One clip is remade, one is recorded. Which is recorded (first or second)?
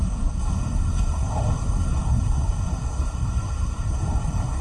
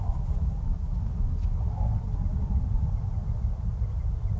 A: second